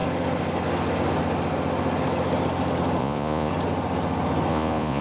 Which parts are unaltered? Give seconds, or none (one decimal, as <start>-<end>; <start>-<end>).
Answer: 0.0-3.0; 3.5-4.5

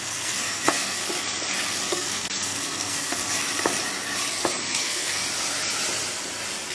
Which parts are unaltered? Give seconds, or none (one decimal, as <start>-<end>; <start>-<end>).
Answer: 1.0-1.9; 3.2-4.6; 5.2-6.7